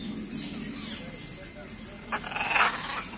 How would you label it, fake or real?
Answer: real